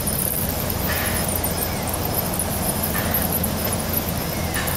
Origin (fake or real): real